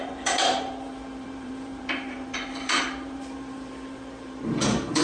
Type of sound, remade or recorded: remade